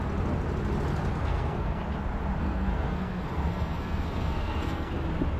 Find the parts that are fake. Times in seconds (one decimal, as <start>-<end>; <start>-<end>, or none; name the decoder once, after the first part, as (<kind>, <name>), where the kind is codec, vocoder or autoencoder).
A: 1.1-1.8 (codec, SNAC); 2.4-4.9